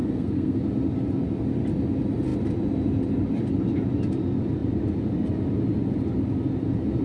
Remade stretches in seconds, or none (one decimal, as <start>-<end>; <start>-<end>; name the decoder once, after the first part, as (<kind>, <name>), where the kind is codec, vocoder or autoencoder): 0.0-0.6 (codec, SNAC)